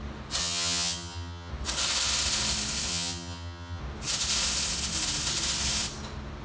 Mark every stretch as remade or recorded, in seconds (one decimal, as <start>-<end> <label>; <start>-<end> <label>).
0.0-0.4 recorded; 0.4-1.5 remade; 1.5-2.9 recorded; 2.9-3.8 remade; 3.8-6.4 recorded